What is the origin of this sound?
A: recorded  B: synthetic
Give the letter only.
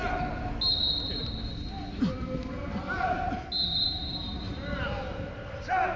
A